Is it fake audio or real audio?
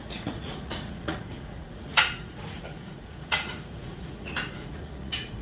fake